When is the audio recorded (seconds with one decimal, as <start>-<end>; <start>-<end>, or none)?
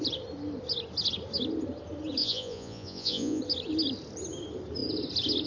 0.0-2.2; 3.4-5.5